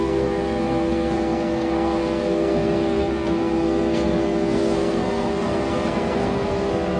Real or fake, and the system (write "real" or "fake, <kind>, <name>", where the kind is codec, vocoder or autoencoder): fake, codec, SNAC